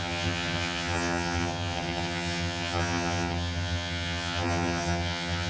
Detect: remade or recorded remade